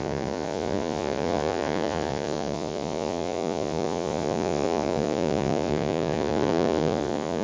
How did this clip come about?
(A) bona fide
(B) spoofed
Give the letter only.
B